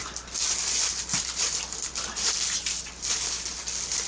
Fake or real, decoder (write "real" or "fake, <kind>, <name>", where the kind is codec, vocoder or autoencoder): real